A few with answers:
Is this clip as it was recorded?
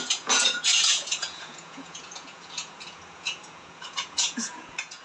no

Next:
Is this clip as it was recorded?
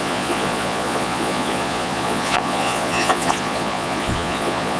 no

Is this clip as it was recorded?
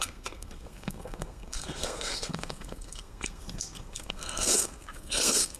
no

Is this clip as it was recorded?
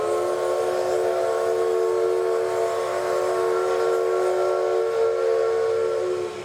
yes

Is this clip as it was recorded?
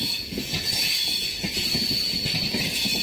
no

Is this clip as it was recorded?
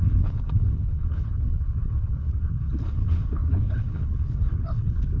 no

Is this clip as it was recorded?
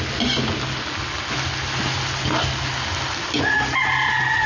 yes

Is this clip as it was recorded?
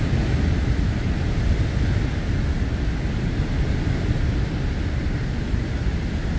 yes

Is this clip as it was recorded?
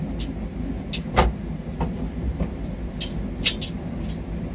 yes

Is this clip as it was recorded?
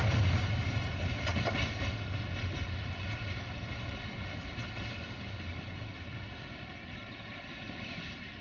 yes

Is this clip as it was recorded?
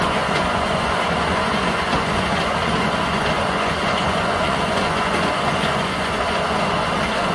no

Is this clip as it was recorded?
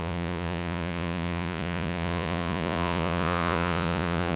no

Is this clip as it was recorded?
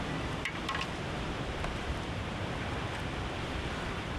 no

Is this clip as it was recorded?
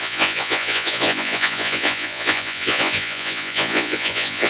no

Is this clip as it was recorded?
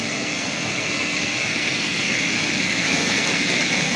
no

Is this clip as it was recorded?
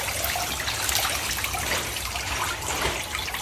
yes